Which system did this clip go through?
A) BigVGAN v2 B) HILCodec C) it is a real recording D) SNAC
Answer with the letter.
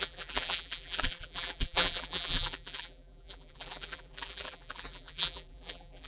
A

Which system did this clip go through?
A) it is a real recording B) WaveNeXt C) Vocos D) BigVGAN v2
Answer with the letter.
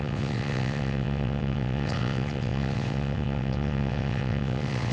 B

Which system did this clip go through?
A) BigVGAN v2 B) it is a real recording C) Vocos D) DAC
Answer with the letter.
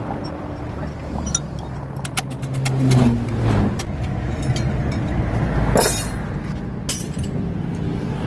B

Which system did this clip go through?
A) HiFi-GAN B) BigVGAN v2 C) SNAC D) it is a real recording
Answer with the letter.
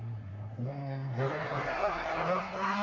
C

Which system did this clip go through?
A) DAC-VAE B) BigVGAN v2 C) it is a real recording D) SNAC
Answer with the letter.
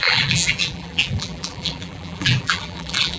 B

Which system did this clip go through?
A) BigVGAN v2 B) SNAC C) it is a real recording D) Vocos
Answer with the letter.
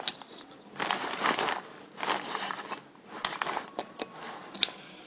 C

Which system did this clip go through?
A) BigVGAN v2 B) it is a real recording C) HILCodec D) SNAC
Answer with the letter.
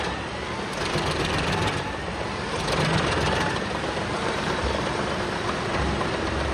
A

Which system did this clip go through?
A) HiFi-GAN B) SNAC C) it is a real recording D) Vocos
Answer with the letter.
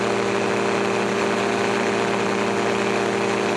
C